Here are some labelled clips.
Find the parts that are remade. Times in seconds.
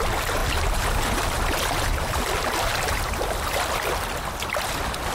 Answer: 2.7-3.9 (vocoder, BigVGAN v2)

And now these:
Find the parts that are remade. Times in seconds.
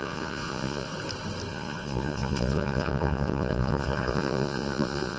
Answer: 0.0-0.9 (vocoder, Vocos); 1.5-5.2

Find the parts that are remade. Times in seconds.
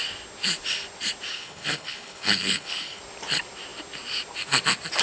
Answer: 1.3-3.0 (codec, HILCodec)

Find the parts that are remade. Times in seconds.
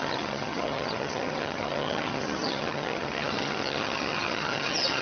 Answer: 0.0-5.0 (vocoder, HiFi-GAN)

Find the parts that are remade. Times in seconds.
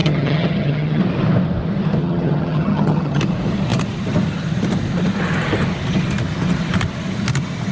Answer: 0.0-1.0 (vocoder, HiFi-GAN); 2.0-3.2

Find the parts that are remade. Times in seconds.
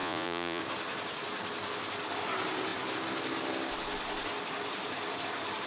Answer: 0.0-0.6 (vocoder, Vocos)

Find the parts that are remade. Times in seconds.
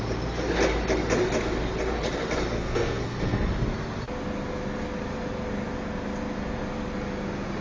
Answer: 2.5-3.5 (codec, SNAC)